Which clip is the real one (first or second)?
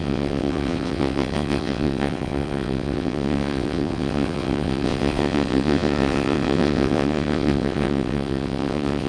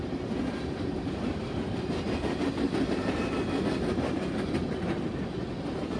second